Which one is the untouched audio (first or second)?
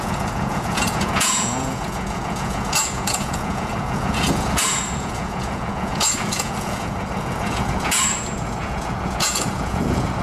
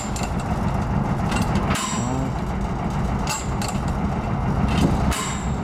second